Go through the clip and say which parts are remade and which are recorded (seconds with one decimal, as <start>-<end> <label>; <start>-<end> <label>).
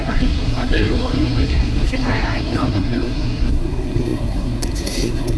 0.0-5.4 remade